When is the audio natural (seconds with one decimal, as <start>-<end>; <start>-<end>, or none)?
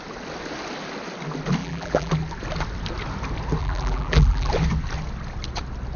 0.0-1.6; 2.1-3.6; 4.5-6.0